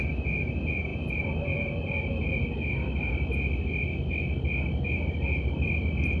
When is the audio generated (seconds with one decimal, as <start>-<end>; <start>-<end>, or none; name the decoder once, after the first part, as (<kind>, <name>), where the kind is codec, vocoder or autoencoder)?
none

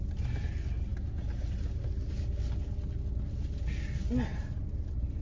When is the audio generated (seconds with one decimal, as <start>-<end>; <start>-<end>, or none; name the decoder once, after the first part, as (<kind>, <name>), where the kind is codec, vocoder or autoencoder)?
none

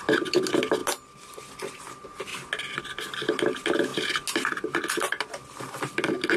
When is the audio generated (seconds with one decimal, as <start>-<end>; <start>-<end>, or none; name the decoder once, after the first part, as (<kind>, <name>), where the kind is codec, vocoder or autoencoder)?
none

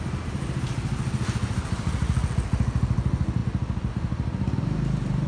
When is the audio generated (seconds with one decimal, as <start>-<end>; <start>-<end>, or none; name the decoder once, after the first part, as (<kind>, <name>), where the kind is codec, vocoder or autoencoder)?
none